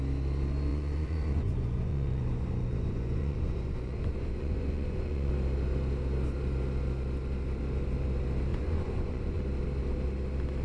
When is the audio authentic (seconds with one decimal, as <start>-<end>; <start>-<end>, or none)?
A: 0.0-0.7; 5.3-8.5; 9.4-10.6